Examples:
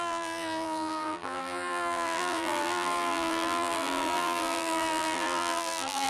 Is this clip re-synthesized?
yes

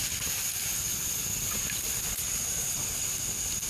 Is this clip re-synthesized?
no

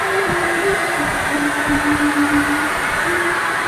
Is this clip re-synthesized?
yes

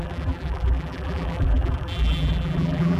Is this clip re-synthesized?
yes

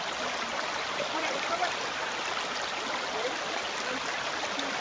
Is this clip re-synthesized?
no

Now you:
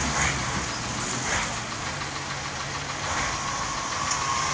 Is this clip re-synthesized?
no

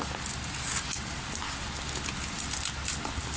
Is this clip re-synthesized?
yes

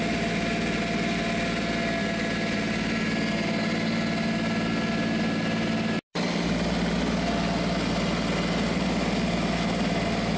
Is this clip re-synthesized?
no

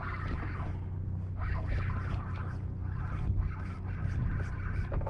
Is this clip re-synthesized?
no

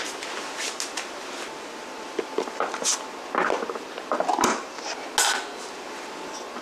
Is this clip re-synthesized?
no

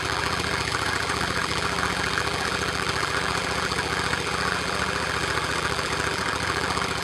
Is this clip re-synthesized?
yes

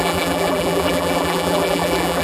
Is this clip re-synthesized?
yes